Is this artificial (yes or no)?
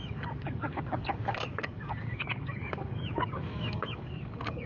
yes